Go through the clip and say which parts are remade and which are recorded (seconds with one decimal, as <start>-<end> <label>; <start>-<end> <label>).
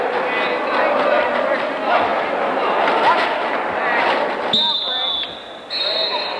0.0-6.4 recorded